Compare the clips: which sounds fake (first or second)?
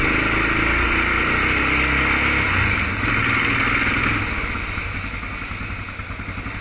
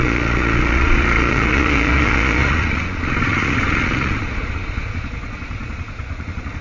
second